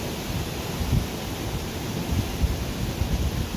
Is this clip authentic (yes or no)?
yes